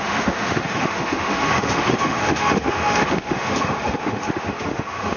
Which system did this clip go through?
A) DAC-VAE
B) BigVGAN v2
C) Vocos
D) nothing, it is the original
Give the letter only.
A